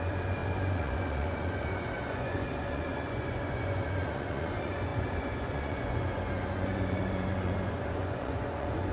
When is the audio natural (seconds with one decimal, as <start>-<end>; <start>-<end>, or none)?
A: none